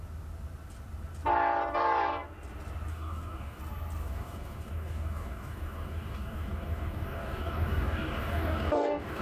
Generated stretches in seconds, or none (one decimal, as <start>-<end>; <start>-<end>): 2.9-3.6; 4.0-9.2